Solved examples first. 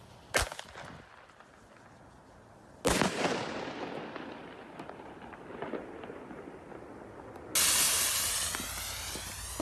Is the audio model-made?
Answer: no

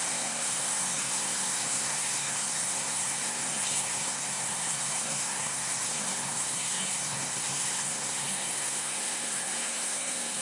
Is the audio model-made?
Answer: yes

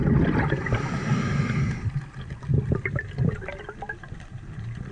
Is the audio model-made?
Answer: no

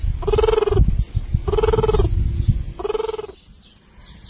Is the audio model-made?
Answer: no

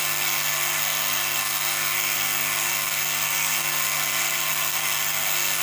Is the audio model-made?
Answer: yes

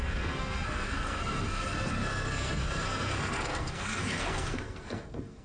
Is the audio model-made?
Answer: yes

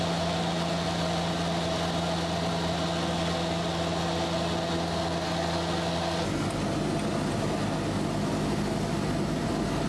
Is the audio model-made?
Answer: no